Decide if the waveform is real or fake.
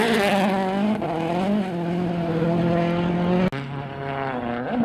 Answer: real